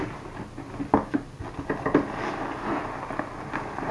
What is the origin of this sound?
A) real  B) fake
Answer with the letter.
A